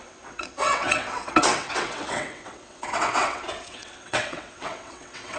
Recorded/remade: remade